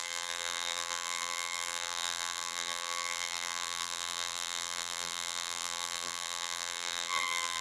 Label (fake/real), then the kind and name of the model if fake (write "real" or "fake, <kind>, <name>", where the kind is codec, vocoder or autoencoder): fake, vocoder, BigVGAN v2